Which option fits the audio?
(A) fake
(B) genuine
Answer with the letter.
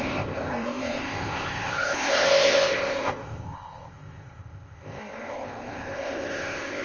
A